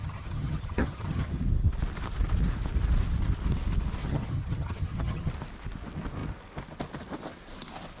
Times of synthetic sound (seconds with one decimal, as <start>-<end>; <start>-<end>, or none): 0.0-1.4; 4.0-5.3